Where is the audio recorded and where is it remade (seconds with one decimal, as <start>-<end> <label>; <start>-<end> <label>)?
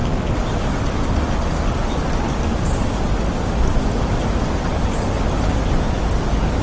0.0-6.6 recorded